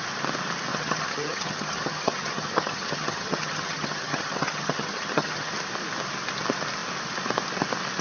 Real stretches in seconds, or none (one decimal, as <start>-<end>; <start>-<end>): 0.0-0.7; 5.5-8.0